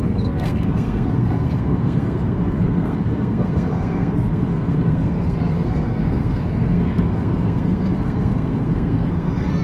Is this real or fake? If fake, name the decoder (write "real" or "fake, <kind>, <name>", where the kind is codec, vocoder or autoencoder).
fake, codec, SNAC